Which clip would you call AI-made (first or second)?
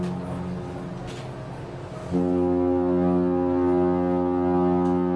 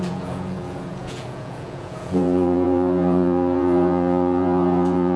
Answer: second